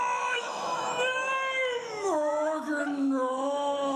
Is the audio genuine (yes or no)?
no